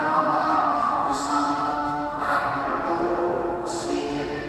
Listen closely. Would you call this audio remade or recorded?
remade